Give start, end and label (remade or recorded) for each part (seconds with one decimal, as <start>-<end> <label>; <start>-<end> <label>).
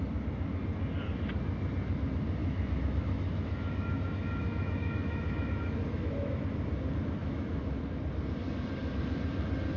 0.0-2.4 recorded; 2.4-6.4 remade; 6.4-7.2 recorded; 7.2-7.8 remade; 7.8-9.8 recorded